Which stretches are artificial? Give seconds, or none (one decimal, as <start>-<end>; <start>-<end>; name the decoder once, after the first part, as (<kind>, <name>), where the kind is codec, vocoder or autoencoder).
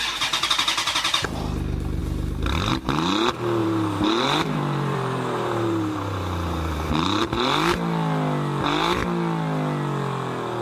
3.6-7.2 (vocoder, BigVGAN v2)